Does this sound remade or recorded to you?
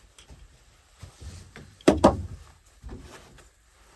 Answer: remade